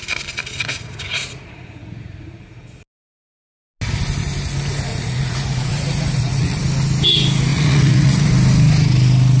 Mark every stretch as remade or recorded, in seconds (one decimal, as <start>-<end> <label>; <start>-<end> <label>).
0.0-0.4 recorded; 0.4-2.8 remade; 2.8-4.9 recorded; 4.9-6.6 remade; 6.6-7.5 recorded; 7.5-8.3 remade; 8.3-9.4 recorded